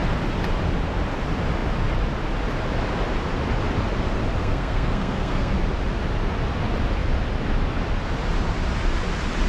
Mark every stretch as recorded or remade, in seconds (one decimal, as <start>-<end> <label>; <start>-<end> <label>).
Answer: 0.0-4.4 recorded; 4.4-5.5 remade; 5.5-9.5 recorded